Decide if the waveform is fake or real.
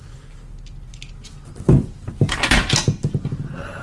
real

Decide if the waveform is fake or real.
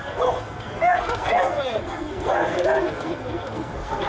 fake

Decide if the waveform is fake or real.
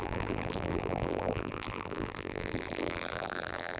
fake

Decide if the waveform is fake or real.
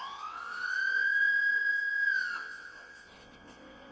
fake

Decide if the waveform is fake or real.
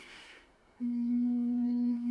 fake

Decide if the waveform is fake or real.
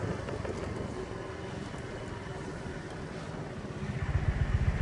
real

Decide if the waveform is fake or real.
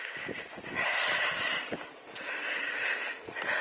real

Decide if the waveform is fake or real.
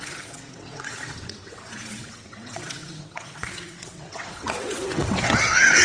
fake